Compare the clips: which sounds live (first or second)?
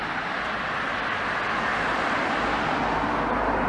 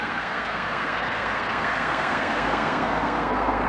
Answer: first